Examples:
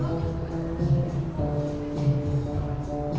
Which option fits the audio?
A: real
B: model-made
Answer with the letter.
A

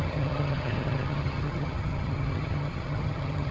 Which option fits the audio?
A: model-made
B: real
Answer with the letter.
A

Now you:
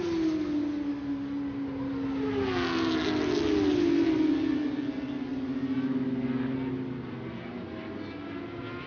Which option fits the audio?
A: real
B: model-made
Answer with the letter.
A